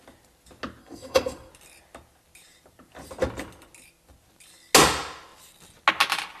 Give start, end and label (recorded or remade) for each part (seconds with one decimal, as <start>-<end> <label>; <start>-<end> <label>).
0.0-0.8 recorded; 0.8-1.5 remade; 1.5-6.4 recorded